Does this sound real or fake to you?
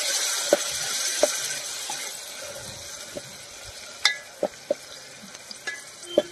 real